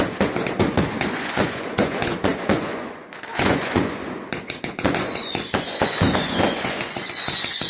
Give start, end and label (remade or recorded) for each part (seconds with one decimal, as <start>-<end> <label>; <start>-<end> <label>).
0.0-7.7 remade